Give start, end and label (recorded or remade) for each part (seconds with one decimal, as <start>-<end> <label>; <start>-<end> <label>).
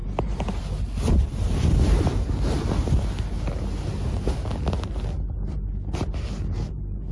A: 0.0-0.6 remade; 0.6-7.1 recorded